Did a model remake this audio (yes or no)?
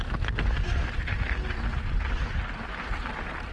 no